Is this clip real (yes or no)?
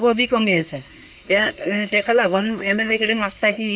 no